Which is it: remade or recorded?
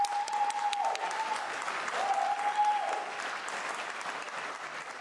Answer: recorded